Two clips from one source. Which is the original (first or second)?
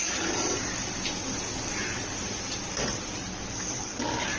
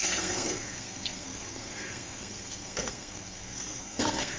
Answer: first